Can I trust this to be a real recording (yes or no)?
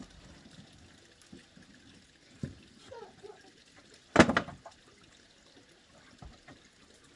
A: yes